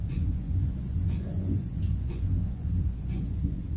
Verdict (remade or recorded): remade